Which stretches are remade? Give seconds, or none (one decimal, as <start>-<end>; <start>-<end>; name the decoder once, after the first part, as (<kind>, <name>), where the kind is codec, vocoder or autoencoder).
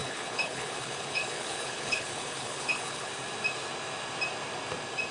0.0-3.1 (codec, HILCodec)